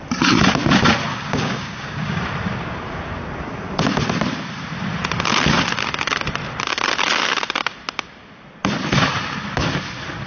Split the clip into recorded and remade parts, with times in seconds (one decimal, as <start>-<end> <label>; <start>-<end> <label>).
0.0-1.1 recorded; 1.1-2.2 remade; 2.2-10.3 recorded